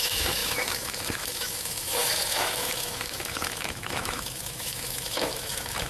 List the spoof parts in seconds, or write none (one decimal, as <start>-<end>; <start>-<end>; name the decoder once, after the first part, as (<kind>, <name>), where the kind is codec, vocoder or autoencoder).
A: 0.0-5.9 (autoencoder, DAC-VAE)